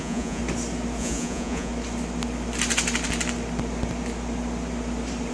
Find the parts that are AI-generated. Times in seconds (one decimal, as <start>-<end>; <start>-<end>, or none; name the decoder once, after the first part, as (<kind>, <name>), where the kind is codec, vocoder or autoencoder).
0.0-0.4 (vocoder, Vocos); 1.0-1.7